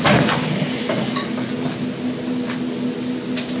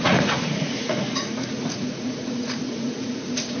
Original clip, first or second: first